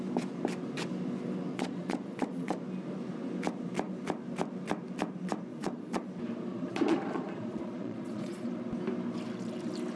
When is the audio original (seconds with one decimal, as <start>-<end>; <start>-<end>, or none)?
0.0-1.5; 2.6-5.5; 6.1-6.5; 8.5-10.0